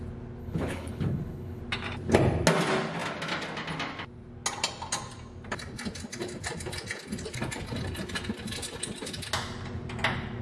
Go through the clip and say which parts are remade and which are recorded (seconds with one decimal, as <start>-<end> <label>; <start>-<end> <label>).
0.0-0.4 recorded; 0.4-1.6 remade; 1.6-10.4 recorded